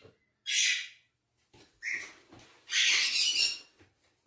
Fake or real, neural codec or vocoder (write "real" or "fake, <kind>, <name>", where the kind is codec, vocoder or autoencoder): real